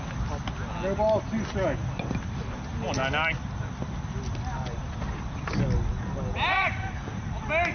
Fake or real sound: real